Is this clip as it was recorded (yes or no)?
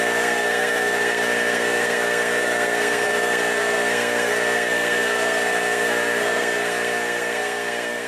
no